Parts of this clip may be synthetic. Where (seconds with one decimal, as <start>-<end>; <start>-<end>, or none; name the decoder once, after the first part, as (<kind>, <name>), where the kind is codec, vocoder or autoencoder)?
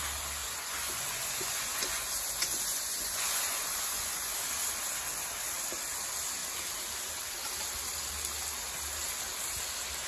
0.4-4.3 (vocoder, Vocos)